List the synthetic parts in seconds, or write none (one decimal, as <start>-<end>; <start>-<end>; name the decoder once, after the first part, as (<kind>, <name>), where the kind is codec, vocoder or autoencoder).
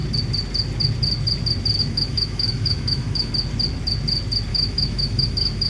1.8-3.3 (autoencoder, DAC-VAE); 4.5-5.7